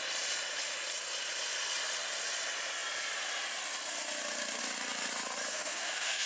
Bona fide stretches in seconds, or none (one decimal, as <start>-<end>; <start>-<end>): 0.0-5.5